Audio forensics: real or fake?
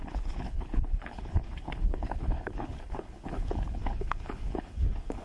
fake